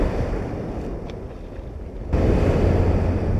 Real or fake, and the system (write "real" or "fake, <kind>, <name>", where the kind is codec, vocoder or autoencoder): real